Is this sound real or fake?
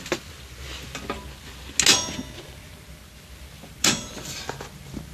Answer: real